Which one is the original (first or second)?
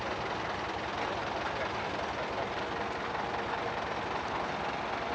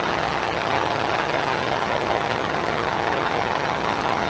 first